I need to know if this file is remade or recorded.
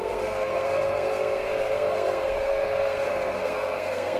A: remade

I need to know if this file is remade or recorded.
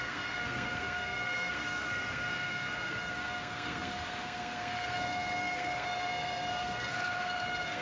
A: remade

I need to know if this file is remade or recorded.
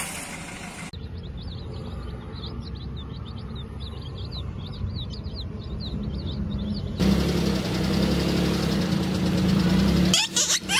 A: recorded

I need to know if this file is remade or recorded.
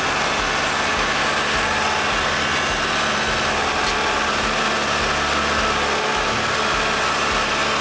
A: recorded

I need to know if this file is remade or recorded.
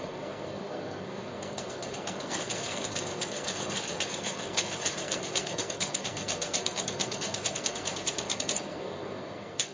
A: remade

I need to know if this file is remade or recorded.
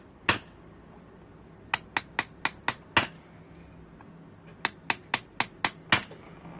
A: recorded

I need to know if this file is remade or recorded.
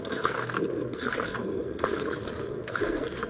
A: remade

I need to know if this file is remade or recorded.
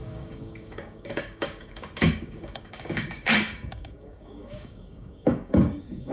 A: remade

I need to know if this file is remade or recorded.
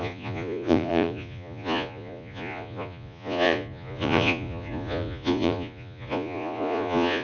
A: remade